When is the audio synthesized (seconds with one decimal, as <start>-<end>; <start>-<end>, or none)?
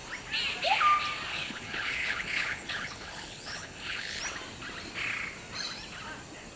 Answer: 1.3-4.2